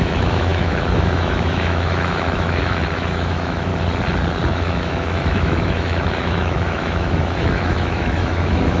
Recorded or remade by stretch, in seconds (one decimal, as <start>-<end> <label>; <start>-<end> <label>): 0.0-3.7 remade; 3.7-4.5 recorded; 4.5-8.8 remade